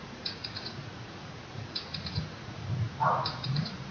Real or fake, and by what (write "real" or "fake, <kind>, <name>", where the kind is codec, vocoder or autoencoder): fake, vocoder, Vocos